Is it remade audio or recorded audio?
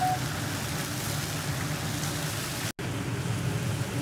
recorded